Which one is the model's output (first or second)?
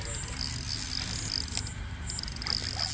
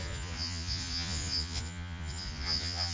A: second